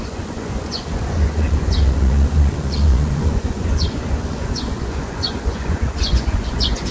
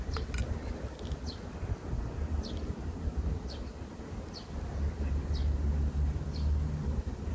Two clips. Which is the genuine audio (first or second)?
second